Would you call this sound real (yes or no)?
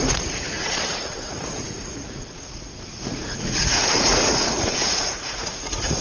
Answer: no